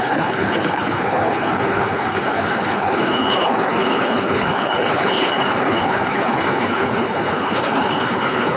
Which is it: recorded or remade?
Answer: remade